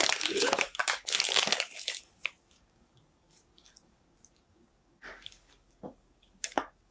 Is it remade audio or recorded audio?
remade